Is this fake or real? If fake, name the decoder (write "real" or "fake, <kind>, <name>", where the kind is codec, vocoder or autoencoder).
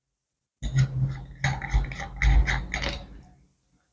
real